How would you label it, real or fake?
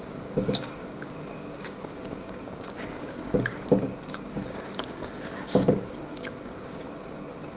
fake